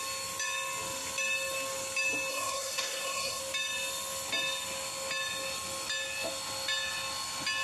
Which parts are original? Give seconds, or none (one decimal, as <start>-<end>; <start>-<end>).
0.0-2.3; 3.4-7.6